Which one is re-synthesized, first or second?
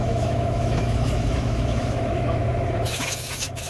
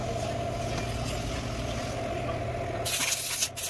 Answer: first